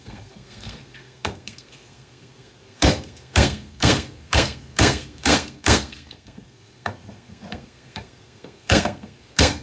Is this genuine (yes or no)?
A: no